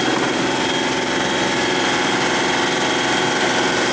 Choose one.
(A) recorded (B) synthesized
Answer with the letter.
A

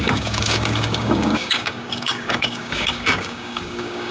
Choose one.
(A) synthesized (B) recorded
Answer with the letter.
A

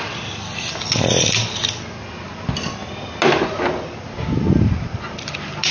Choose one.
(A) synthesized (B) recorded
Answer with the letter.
B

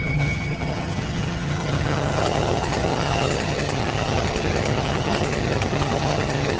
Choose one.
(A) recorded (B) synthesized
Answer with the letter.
B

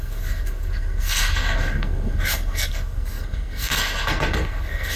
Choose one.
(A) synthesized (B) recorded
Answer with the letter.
A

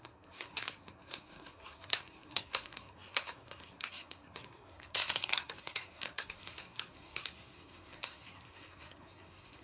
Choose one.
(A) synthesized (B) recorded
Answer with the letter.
A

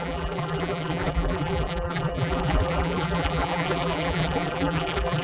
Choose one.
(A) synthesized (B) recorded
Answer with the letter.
A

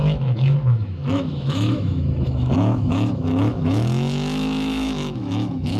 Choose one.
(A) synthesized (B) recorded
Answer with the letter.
A